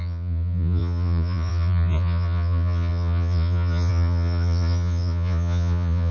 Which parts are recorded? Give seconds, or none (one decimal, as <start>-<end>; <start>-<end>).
none